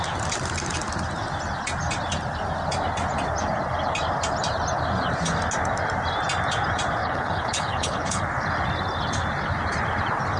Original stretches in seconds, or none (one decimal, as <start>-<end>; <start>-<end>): 0.0-7.0; 8.2-10.4